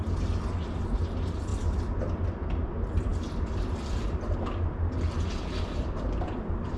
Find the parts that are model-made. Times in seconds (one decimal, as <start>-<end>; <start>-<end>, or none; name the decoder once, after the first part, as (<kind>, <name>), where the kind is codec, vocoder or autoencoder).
none